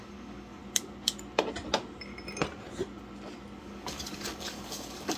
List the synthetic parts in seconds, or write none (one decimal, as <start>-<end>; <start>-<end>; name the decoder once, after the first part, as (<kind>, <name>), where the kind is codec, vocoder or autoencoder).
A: 0.0-0.6 (codec, DAC); 3.6-5.2